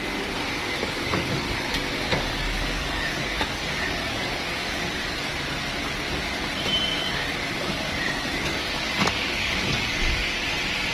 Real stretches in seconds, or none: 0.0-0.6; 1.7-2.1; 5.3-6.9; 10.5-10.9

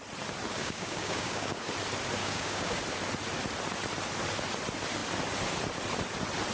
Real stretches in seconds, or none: 0.0-0.6; 1.7-2.2; 2.8-6.5

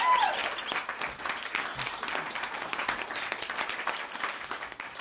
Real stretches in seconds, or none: 0.0-5.0

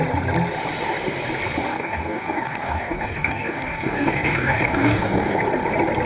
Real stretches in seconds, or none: 0.0-1.7; 5.4-6.1